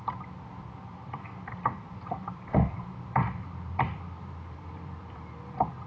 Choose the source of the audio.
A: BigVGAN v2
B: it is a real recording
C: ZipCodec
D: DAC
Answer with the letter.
A